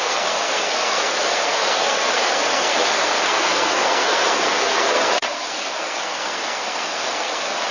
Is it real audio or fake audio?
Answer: fake